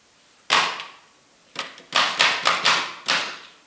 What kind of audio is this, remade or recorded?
recorded